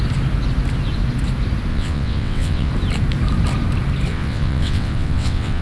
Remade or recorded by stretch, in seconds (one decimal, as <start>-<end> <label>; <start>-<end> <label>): 0.0-1.7 recorded; 1.7-2.7 remade; 2.7-4.1 recorded; 4.1-5.6 remade

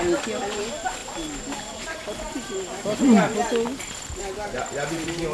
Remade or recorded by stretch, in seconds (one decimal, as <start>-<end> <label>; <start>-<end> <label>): 0.0-5.3 recorded

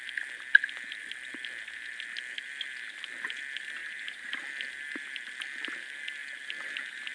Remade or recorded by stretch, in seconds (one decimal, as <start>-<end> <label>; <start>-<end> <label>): 0.0-3.8 recorded; 3.8-4.4 remade; 4.4-7.1 recorded

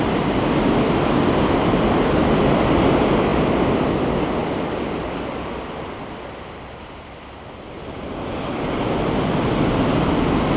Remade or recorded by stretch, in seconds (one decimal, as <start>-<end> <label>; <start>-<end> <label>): 0.0-3.3 recorded; 3.3-4.0 remade; 4.0-4.4 recorded; 4.4-8.9 remade; 8.9-10.6 recorded